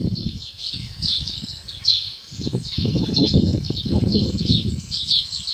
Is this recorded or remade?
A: remade